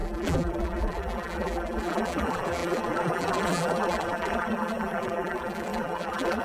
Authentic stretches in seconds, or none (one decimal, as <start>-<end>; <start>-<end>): none

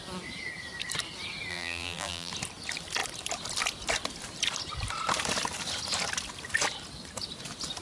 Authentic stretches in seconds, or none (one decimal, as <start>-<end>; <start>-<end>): 0.0-1.5; 2.3-7.8

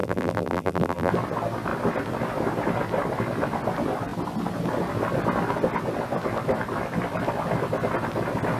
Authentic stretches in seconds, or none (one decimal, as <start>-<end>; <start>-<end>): 1.1-8.6

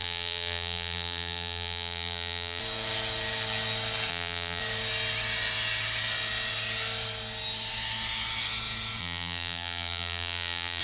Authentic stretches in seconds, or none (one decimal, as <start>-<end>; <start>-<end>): 2.6-4.1; 4.6-9.0

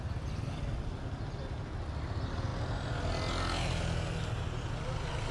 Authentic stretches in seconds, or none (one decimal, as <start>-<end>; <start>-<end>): 0.0-5.3

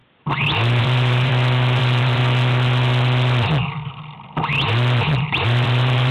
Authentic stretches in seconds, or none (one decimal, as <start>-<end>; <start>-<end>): 0.0-0.8; 1.3-1.8; 2.2-5.3

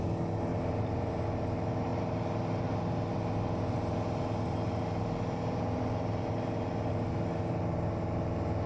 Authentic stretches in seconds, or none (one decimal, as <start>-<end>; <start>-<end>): 0.0-0.5; 1.1-8.7

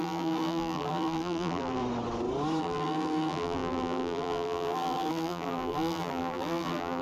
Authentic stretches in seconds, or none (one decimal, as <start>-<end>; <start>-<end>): 1.8-2.6